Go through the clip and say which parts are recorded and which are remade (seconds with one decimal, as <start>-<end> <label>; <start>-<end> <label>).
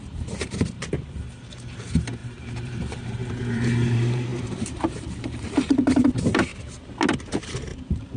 0.0-6.5 remade; 6.5-7.2 recorded; 7.2-8.2 remade